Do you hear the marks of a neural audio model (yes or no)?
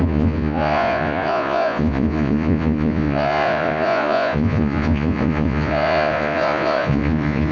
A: yes